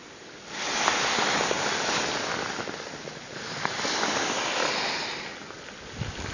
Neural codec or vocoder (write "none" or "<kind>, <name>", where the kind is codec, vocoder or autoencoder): none